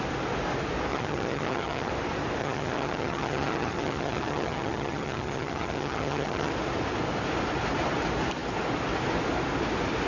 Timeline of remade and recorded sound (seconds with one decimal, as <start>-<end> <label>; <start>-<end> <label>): 0.0-0.9 recorded; 0.9-1.9 remade; 1.9-2.4 recorded; 2.4-6.5 remade; 6.5-10.1 recorded